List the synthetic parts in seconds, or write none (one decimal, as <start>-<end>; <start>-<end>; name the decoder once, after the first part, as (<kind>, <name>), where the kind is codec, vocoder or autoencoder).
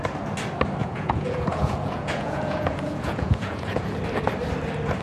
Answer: 0.8-3.8 (vocoder, Vocos)